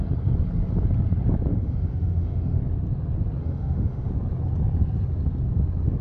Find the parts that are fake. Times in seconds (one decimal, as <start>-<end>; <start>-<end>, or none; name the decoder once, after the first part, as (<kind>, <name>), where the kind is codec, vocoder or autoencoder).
1.5-2.6 (autoencoder, DAC-VAE); 3.4-4.1